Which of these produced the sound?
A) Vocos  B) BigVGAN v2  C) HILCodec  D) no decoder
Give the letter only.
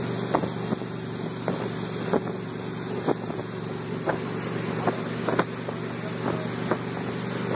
D